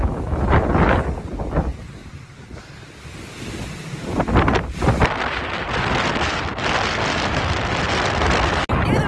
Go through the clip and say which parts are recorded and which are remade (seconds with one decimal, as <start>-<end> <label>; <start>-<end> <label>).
0.0-9.1 recorded